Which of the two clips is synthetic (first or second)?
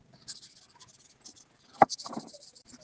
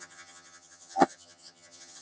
second